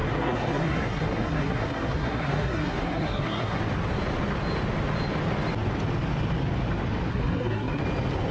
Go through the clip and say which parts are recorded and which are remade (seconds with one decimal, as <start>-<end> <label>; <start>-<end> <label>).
0.0-3.6 remade; 3.6-7.1 recorded; 7.1-7.8 remade; 7.8-8.3 recorded